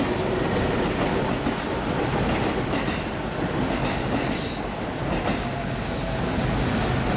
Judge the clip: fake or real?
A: real